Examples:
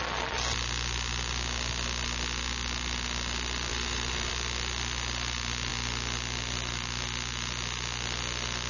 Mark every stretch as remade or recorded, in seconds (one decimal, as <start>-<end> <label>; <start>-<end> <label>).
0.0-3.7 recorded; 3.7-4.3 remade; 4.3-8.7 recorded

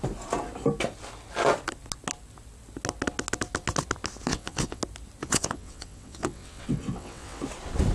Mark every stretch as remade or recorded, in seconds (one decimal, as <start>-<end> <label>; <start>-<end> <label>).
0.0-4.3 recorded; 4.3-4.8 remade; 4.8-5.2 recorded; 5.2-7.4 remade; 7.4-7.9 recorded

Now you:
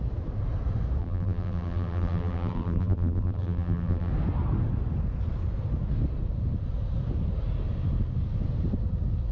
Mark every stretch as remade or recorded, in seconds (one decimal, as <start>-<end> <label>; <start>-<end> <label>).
0.0-1.0 recorded; 1.0-4.1 remade; 4.1-9.3 recorded

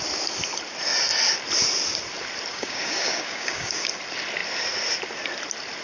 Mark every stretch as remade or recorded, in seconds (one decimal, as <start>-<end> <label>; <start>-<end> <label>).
0.0-2.5 recorded; 2.5-3.9 remade; 3.9-5.8 recorded

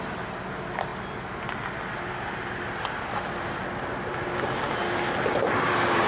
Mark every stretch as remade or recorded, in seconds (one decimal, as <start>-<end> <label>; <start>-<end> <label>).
0.0-6.1 recorded